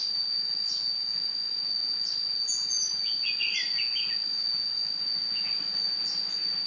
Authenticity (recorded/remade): recorded